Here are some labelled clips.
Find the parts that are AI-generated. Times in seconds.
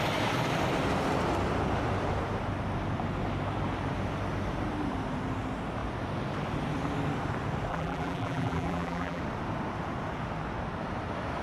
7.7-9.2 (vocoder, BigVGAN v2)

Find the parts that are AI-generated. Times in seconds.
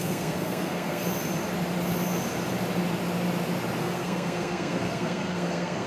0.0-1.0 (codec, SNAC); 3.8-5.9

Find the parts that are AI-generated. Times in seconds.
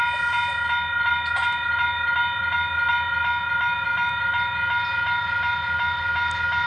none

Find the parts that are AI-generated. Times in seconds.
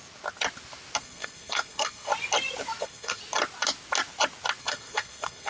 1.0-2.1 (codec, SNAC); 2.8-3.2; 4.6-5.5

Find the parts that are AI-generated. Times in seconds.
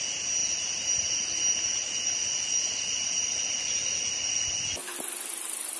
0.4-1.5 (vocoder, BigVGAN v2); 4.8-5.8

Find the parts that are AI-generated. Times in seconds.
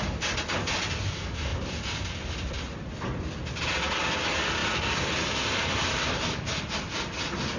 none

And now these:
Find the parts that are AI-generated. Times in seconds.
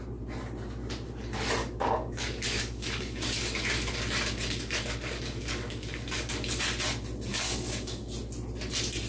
1.6-6.6 (codec, DAC); 7.3-8.0